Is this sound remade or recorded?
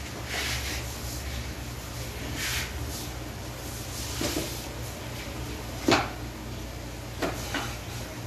recorded